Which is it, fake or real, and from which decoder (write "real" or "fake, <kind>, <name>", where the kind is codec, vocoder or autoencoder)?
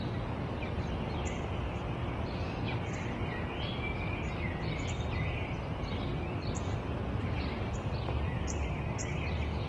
real